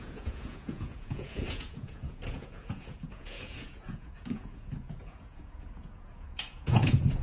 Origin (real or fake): fake